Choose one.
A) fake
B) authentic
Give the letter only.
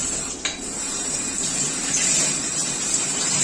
A